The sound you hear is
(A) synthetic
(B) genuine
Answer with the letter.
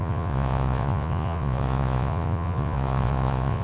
A